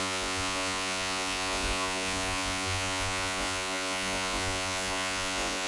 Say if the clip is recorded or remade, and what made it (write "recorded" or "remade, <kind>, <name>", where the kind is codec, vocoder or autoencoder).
remade, vocoder, Vocos